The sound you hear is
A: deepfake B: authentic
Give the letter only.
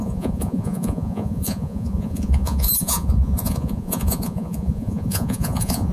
A